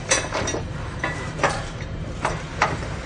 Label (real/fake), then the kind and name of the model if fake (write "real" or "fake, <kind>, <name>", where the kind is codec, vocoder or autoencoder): fake, vocoder, BigVGAN v2